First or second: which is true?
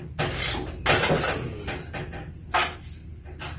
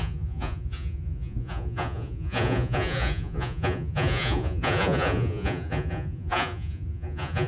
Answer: first